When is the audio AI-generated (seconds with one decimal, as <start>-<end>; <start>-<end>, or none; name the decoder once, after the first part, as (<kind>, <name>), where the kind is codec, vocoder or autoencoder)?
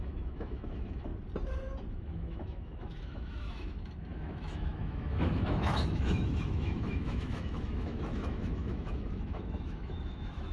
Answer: 0.0-1.1 (autoencoder, DAC-VAE); 1.9-10.5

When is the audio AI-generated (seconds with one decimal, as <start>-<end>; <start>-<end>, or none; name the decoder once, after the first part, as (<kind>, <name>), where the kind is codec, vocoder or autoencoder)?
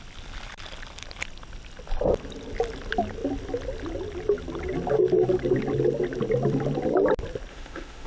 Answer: 7.5-8.1 (autoencoder, DAC-VAE)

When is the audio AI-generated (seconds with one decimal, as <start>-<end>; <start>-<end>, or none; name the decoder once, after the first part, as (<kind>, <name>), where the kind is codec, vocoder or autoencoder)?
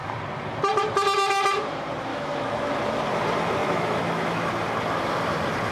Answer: 2.1-2.7 (autoencoder, DAC-VAE); 3.6-4.5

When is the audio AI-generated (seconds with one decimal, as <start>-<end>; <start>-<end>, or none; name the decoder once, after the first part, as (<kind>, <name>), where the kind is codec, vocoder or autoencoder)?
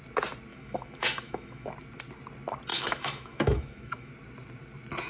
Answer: 0.5-1.7 (autoencoder, DAC-VAE); 2.7-4.1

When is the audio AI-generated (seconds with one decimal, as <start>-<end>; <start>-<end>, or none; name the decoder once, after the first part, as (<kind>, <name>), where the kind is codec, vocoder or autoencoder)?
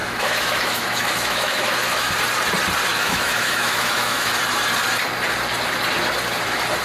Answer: 0.0-2.1 (autoencoder, DAC-VAE); 2.9-4.3